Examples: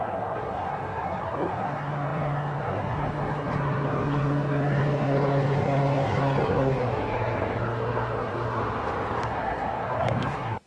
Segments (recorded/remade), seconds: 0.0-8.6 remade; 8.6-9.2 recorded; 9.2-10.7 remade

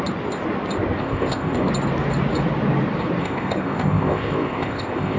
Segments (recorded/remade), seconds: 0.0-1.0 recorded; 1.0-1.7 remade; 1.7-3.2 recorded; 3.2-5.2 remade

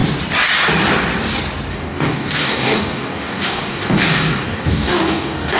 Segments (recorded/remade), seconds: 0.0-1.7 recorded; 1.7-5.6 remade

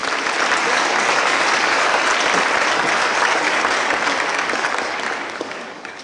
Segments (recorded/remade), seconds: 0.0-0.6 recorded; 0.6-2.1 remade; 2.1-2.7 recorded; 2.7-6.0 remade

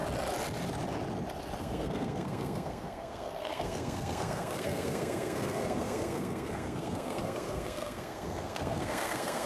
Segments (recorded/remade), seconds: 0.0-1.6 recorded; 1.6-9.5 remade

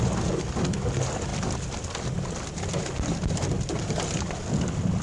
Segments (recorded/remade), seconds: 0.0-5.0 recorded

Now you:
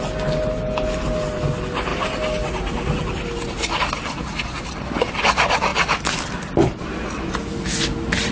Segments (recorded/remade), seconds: 0.0-8.3 recorded